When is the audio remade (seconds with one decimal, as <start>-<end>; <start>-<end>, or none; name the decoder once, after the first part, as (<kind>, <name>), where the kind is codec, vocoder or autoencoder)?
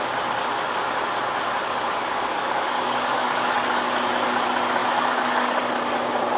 2.0-3.9 (codec, DAC); 4.8-5.6